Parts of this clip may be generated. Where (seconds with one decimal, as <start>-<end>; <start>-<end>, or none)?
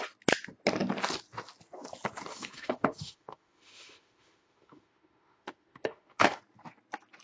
2.3-6.4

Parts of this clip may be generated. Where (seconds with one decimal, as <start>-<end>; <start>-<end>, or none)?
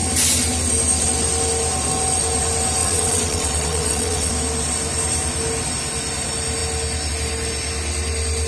2.8-4.3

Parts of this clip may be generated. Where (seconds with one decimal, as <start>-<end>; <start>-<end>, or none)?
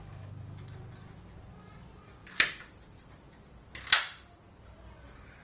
2.2-3.7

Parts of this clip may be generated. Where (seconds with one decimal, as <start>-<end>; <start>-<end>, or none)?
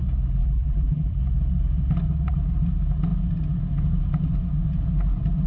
0.4-1.2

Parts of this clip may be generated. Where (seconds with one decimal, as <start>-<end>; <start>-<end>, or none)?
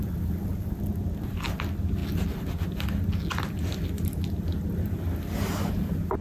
none